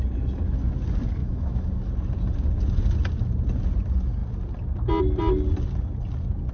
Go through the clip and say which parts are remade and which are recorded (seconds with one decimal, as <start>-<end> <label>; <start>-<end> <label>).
0.0-1.2 recorded; 1.2-1.7 remade; 1.7-6.5 recorded